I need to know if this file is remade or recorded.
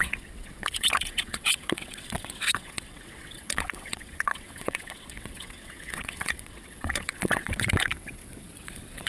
remade